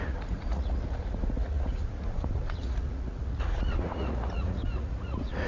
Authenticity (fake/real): fake